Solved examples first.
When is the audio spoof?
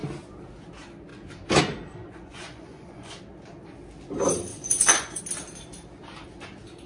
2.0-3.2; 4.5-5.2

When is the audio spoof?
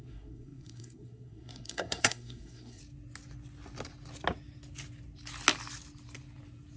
0.0-2.8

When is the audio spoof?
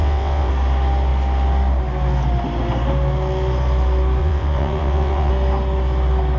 0.0-0.5; 4.2-5.3